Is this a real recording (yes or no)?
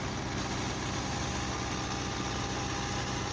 yes